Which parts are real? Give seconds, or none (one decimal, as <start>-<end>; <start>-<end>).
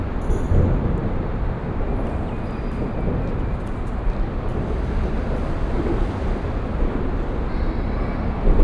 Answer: 0.0-8.6